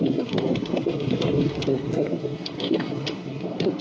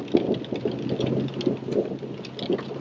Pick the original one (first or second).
second